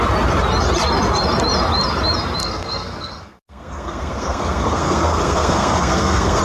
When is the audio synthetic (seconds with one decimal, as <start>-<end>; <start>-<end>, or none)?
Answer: 2.4-6.4